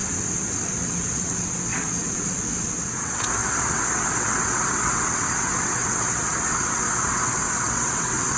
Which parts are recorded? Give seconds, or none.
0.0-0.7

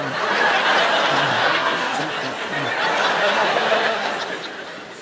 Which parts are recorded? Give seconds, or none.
0.0-1.3; 2.0-3.2; 4.1-5.0